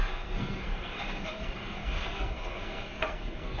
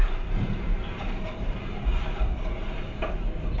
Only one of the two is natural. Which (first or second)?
second